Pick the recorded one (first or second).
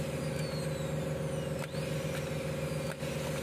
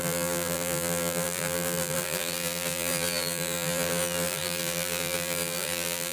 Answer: first